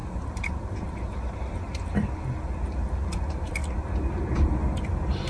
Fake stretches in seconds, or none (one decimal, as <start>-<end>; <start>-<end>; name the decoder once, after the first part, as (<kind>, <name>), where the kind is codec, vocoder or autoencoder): 3.1-3.6 (vocoder, BigVGAN v2); 4.8-5.3